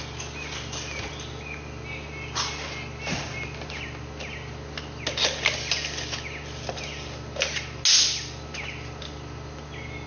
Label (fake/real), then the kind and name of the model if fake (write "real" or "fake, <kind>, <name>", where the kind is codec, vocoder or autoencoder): real